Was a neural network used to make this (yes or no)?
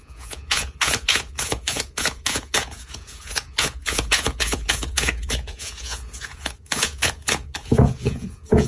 yes